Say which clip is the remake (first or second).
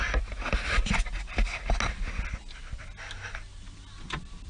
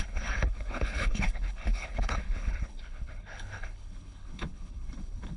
second